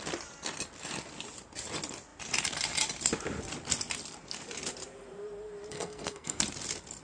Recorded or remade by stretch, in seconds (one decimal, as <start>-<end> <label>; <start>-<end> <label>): 0.0-5.7 recorded; 5.7-6.4 remade; 6.4-7.0 recorded